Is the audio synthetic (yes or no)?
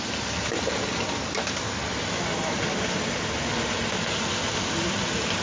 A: no